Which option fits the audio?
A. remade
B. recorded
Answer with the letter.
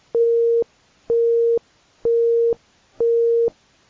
B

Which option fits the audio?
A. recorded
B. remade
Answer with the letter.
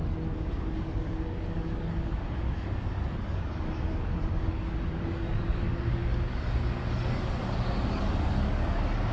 B